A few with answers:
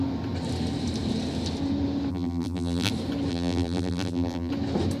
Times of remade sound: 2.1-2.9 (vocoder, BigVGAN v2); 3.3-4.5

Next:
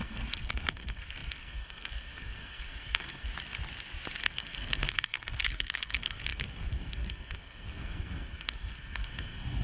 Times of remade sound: 0.0-3.3 (codec, SNAC); 4.2-9.6

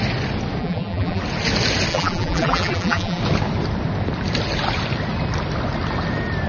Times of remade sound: 0.6-1.2 (vocoder, BigVGAN v2); 1.9-3.2

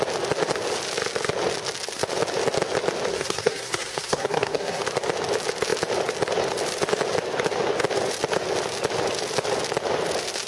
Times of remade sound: 3.1-4.8 (codec, SNAC)

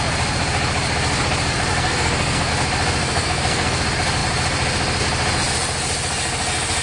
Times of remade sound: 1.7-2.5 (codec, SNAC); 3.0-3.8

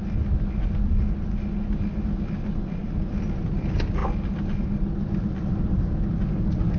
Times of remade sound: none

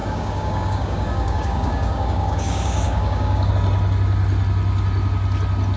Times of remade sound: 0.0-3.5 (codec, DAC)